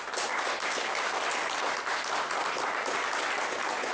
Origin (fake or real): real